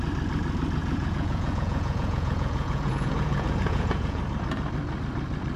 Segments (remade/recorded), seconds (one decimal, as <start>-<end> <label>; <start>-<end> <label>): 0.0-0.8 recorded; 0.8-4.2 remade; 4.2-5.6 recorded